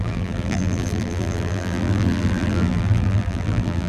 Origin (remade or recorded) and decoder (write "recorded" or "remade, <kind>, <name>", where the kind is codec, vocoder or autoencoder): remade, vocoder, BigVGAN v2